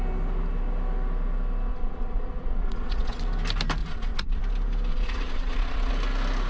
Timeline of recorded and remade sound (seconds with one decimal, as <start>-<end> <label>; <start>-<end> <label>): 0.0-1.7 recorded; 1.7-3.2 remade; 3.2-3.8 recorded; 3.8-4.4 remade; 4.4-4.9 recorded; 4.9-5.9 remade; 5.9-6.5 recorded